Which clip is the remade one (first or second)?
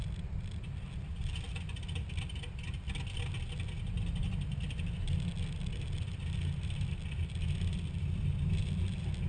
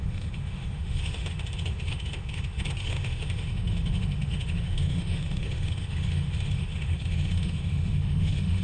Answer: second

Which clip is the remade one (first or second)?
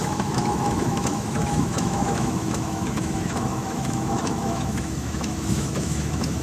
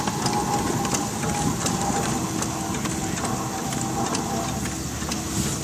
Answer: first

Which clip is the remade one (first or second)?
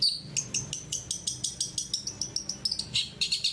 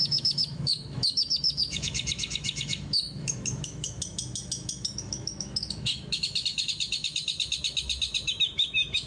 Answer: second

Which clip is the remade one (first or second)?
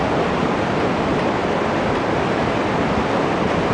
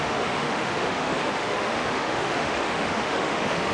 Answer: second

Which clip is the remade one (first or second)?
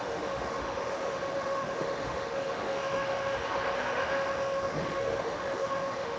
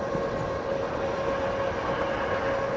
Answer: first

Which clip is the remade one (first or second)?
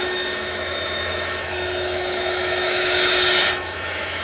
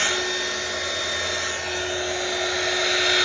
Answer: first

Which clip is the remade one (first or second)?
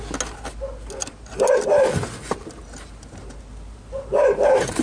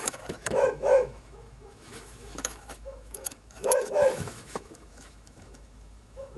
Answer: second